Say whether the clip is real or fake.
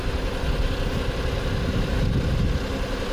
real